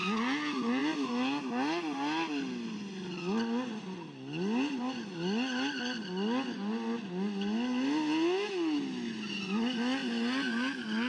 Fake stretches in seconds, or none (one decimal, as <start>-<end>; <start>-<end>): none